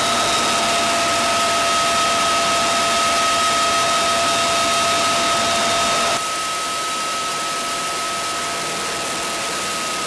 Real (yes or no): yes